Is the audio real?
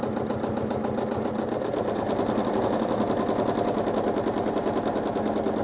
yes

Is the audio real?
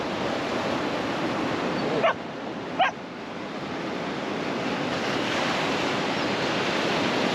yes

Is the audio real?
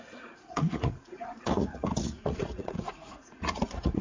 no